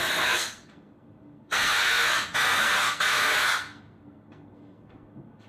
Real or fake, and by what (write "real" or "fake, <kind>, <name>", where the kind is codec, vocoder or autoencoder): fake, codec, SNAC